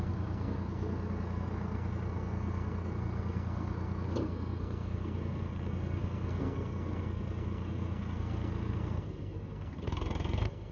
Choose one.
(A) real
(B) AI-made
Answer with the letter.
B